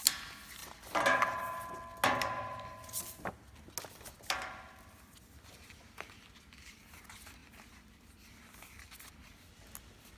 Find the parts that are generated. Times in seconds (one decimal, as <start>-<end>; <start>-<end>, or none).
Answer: none